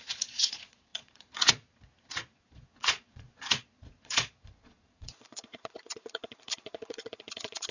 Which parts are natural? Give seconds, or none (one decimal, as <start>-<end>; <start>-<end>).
none